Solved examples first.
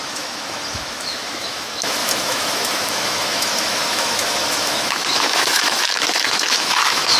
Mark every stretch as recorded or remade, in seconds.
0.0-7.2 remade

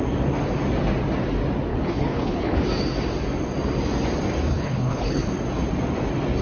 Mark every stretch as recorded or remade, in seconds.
0.0-1.7 recorded; 1.7-2.6 remade; 2.6-4.5 recorded; 4.5-5.3 remade; 5.3-6.4 recorded

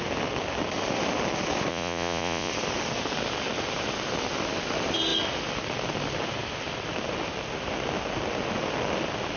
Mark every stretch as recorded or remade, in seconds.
0.0-1.7 recorded; 1.7-2.5 remade; 2.5-9.4 recorded

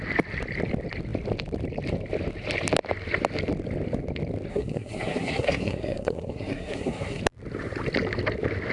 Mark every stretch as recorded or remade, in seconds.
0.0-4.5 recorded; 4.5-7.2 remade; 7.2-8.7 recorded

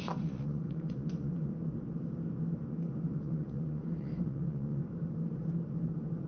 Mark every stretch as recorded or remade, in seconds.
0.0-1.5 remade; 1.5-2.7 recorded; 2.7-4.8 remade; 4.8-6.3 recorded

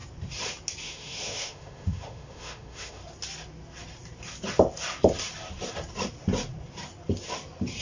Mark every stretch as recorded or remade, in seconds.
0.0-0.8 recorded; 0.8-3.0 remade; 3.0-7.8 recorded

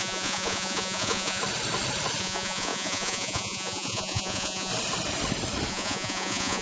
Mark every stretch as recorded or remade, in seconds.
0.0-1.4 remade; 1.4-2.2 recorded; 2.2-4.7 remade; 4.7-5.7 recorded; 5.7-6.6 remade